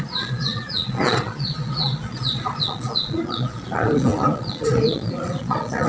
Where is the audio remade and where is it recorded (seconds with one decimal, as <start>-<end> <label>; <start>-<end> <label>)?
0.0-5.9 remade